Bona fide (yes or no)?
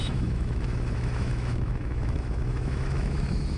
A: no